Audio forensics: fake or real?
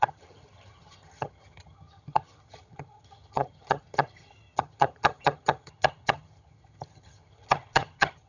fake